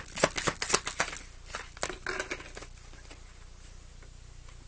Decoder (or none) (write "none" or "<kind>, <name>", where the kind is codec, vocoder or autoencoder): none